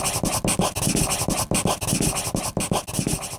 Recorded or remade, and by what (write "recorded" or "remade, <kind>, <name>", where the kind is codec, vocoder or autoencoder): recorded